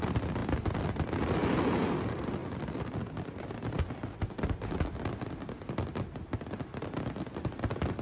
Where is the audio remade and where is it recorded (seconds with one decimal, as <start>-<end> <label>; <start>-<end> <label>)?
0.0-8.0 recorded